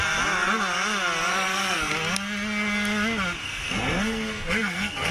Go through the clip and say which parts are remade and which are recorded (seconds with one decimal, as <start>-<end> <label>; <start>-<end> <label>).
0.0-1.3 recorded; 1.3-1.9 remade; 1.9-3.4 recorded; 3.4-5.1 remade